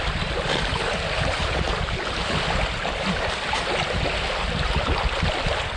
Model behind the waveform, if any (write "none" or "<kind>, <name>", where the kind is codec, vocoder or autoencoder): none